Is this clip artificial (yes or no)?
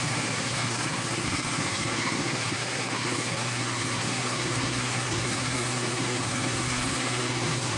yes